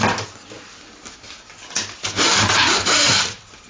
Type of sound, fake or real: real